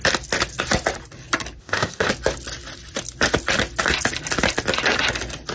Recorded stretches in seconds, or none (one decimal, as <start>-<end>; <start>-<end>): 0.0-1.6; 2.1-5.5